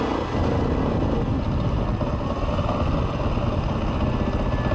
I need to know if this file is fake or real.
real